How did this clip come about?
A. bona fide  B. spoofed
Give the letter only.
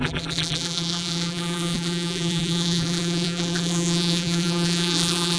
B